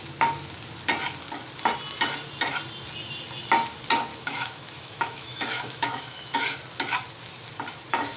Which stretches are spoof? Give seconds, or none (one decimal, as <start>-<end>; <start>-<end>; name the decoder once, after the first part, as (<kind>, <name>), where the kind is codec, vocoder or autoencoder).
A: 4.1-6.4 (autoencoder, DAC-VAE)